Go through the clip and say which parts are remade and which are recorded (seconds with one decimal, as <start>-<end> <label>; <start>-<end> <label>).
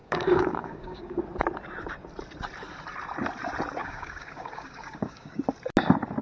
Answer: 0.0-1.2 remade; 1.2-3.8 recorded; 3.8-5.4 remade; 5.4-6.2 recorded